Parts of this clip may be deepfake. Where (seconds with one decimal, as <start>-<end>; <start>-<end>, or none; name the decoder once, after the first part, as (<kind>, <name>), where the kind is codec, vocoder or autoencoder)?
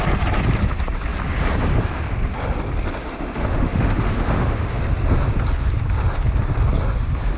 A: 3.0-4.8 (autoencoder, DAC-VAE)